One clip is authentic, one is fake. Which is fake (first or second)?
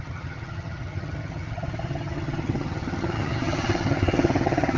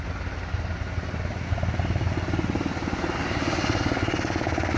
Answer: first